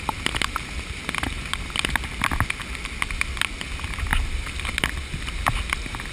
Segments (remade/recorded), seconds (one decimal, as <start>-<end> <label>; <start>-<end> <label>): 0.0-4.1 recorded; 4.1-5.2 remade; 5.2-6.1 recorded